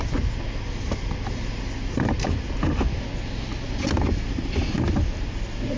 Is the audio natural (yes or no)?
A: yes